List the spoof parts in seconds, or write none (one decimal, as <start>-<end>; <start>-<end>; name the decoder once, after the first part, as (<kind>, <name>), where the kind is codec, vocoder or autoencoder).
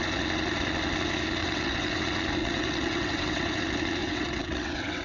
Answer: 1.4-2.0 (vocoder, WaveNeXt); 2.4-3.6; 4.0-5.0